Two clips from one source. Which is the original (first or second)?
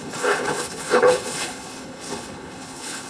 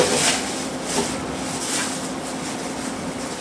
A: second